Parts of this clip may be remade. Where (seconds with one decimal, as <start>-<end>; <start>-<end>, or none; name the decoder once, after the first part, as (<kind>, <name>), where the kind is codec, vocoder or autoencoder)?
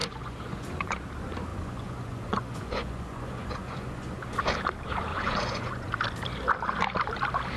0.0-1.0 (vocoder, Vocos); 1.5-4.4; 5.1-5.9